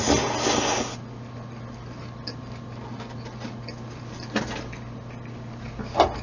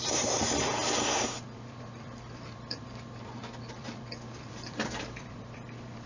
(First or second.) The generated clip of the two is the second